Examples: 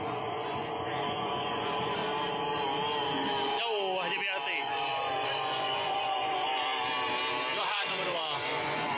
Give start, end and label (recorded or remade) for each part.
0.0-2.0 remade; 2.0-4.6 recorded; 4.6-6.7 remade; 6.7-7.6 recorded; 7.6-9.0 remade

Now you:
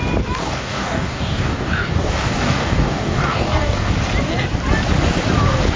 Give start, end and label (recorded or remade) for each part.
0.0-0.4 recorded; 0.4-3.9 remade; 3.9-5.8 recorded

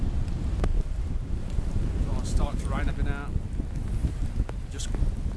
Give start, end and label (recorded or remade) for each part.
0.0-0.7 recorded; 0.7-2.9 remade; 2.9-4.0 recorded; 4.0-4.6 remade; 4.6-5.4 recorded

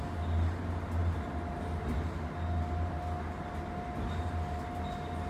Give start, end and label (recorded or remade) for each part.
0.0-5.3 recorded

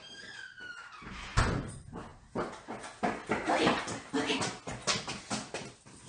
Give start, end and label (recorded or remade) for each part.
0.0-6.1 recorded